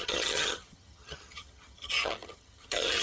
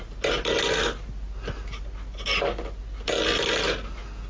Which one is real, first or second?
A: second